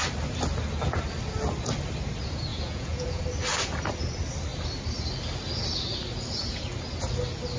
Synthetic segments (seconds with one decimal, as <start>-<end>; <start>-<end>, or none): 2.5-3.2